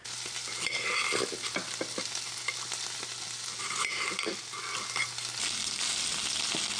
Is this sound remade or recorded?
recorded